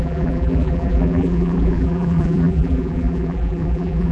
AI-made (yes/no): yes